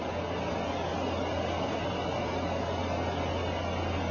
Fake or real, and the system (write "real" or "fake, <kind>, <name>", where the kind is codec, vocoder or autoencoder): real